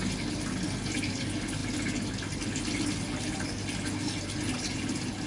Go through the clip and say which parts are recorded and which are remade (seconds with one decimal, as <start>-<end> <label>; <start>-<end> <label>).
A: 0.0-5.3 recorded